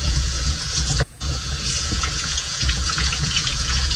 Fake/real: fake